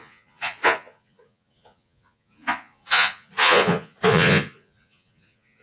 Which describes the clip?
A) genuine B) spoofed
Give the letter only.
B